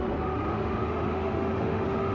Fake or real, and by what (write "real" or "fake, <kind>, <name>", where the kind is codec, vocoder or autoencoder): fake, autoencoder, DAC-VAE